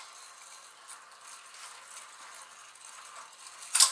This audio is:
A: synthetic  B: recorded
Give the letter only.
B